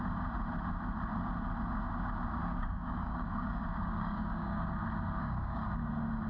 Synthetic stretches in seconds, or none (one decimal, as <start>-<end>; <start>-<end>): 2.4-4.7; 5.2-5.7